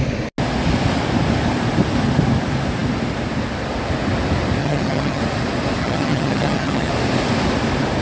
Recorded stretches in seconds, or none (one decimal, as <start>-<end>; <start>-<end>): 0.0-4.6; 5.2-5.8; 6.9-8.0